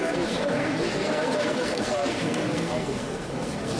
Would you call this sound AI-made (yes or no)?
yes